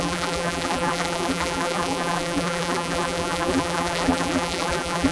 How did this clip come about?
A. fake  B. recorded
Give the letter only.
A